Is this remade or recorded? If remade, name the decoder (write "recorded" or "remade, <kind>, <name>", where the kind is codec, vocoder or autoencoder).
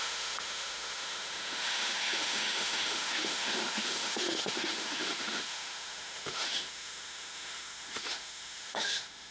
remade, autoencoder, DAC-VAE